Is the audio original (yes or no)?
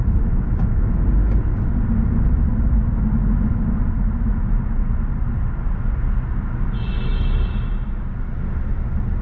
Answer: yes